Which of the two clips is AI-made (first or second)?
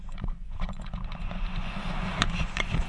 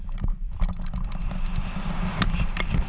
first